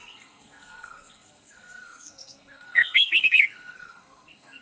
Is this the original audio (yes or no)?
no